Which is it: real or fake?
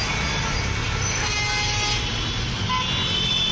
real